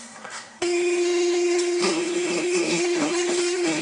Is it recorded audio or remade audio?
remade